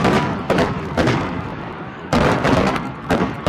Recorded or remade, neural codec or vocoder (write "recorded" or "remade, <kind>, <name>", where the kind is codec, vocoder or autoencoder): remade, codec, DAC